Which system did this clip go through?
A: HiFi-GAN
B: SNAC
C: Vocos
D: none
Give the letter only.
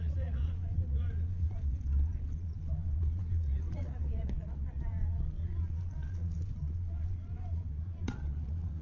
C